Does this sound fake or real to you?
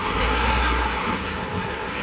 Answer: fake